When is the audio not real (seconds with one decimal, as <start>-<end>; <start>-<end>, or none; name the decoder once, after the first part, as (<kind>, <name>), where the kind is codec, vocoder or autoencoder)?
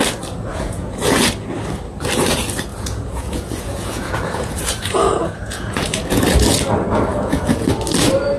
0.5-1.2 (vocoder, Vocos); 2.7-6.2; 7.1-7.7